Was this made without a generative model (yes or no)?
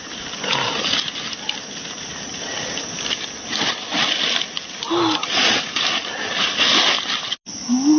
yes